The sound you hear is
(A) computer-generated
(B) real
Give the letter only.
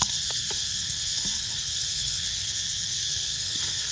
A